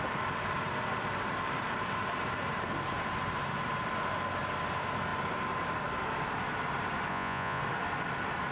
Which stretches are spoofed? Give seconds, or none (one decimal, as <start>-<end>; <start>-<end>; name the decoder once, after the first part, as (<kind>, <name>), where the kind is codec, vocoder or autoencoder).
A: 7.1-7.6 (vocoder, Vocos)